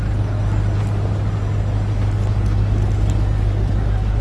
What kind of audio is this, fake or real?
real